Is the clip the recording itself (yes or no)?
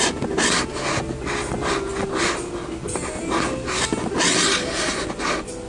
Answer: yes